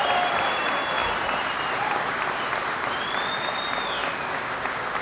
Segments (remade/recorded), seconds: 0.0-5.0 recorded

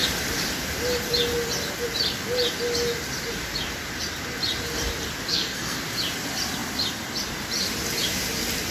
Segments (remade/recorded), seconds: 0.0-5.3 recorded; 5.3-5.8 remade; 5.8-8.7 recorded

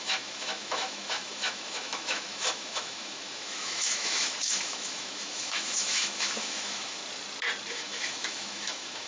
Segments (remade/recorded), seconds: 0.0-7.0 remade; 7.0-7.7 recorded; 7.7-9.1 remade

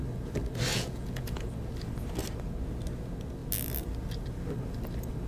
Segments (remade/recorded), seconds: 0.0-0.7 recorded; 0.7-1.5 remade; 1.5-5.3 recorded